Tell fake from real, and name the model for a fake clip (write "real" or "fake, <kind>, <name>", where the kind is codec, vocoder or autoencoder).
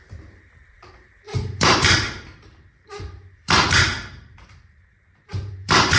fake, vocoder, BigVGAN v2